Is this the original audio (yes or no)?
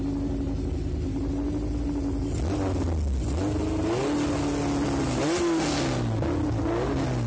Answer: yes